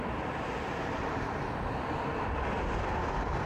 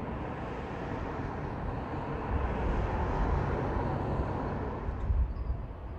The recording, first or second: second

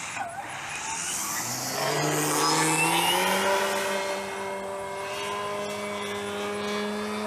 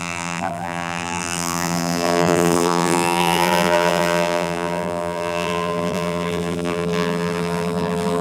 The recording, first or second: first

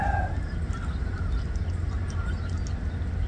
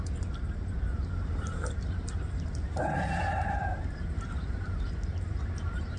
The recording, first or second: first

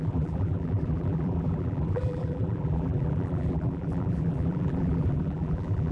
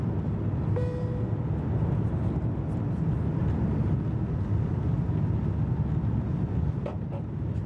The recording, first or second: second